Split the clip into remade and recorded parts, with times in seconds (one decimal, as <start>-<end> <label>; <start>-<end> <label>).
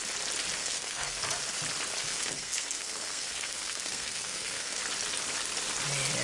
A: 0.0-0.6 recorded; 0.6-1.2 remade; 1.2-2.0 recorded; 2.0-4.8 remade; 4.8-6.2 recorded